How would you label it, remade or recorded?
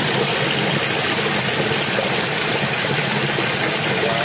recorded